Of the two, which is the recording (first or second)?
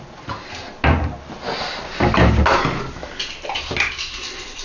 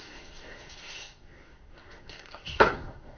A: first